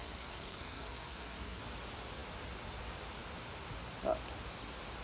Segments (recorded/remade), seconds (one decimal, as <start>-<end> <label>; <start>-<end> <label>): 0.0-1.6 remade; 1.6-5.0 recorded